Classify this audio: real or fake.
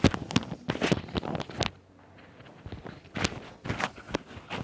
real